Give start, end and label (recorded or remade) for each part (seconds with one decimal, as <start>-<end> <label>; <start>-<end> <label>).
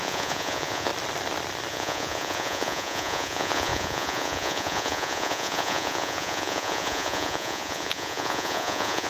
0.0-0.9 remade; 0.9-1.7 recorded; 1.7-9.1 remade